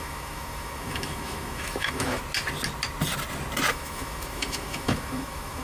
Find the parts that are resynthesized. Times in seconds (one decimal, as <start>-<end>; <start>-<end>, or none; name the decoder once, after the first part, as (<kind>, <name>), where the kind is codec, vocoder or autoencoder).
0.0-2.2 (autoencoder, DAC-VAE); 3.7-5.6